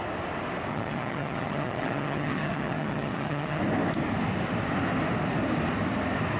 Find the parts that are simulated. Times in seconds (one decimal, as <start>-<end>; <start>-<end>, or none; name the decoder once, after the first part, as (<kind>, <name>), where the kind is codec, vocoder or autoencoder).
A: 0.7-3.6 (vocoder, HiFi-GAN)